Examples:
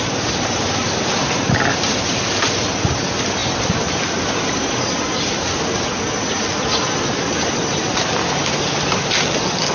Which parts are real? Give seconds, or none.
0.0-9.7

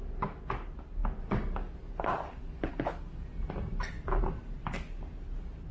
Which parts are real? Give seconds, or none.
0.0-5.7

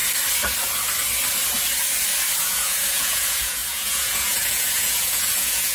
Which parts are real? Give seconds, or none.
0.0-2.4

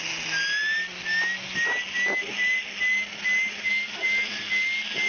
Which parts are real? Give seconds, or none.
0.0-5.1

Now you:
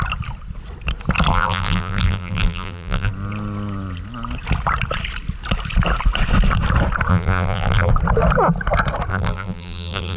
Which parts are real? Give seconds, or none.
0.0-1.3; 3.1-7.1; 7.9-9.1

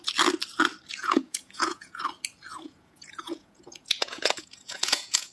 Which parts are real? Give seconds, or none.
0.0-1.0; 2.0-2.5